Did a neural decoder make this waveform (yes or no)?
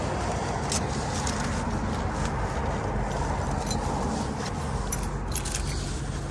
no